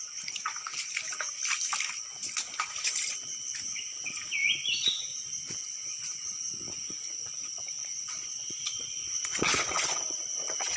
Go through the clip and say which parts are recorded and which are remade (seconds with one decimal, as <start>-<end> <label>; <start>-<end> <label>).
0.0-7.8 recorded; 7.8-10.8 remade